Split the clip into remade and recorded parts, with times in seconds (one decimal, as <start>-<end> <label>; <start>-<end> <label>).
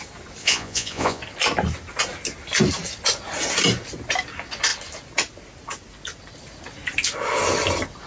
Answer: 0.0-0.4 recorded; 0.4-1.2 remade; 1.2-8.1 recorded